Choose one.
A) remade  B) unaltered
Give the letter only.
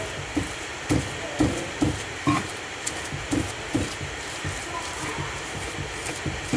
B